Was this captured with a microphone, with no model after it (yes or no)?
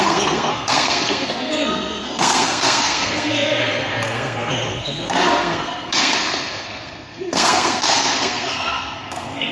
no